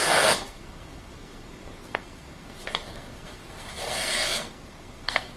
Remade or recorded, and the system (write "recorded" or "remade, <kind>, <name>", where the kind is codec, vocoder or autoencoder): remade, codec, SNAC